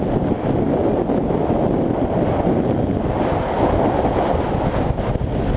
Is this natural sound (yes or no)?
yes